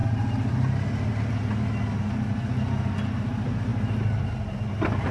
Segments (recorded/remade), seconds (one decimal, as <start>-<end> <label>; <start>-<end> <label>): 0.0-5.1 recorded